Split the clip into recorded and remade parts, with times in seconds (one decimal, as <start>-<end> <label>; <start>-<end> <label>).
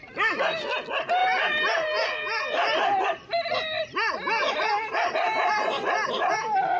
0.0-1.2 recorded; 1.2-3.4 remade; 3.4-4.4 recorded; 4.4-6.8 remade